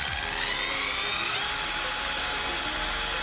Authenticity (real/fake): real